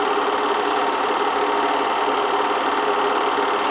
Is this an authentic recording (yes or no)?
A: yes